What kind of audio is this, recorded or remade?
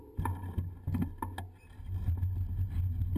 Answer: recorded